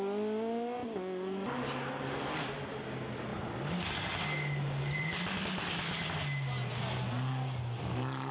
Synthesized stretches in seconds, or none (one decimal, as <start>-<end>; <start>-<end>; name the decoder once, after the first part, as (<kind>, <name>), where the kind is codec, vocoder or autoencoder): none